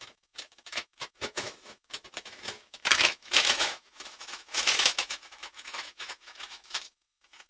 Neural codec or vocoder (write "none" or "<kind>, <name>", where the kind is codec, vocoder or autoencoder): autoencoder, DAC-VAE